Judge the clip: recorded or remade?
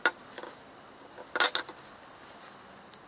recorded